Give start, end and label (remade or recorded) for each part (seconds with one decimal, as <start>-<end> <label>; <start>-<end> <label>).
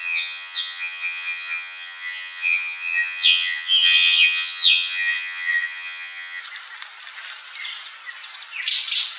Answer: 0.0-6.4 remade; 6.4-9.2 recorded